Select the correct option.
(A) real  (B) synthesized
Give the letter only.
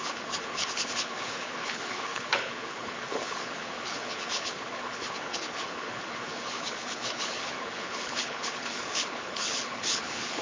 B